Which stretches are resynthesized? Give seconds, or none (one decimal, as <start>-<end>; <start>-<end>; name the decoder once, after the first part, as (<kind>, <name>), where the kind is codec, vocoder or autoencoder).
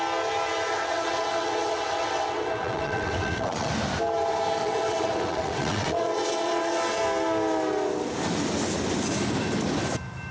0.7-3.7 (vocoder, WaveNeXt); 4.6-7.0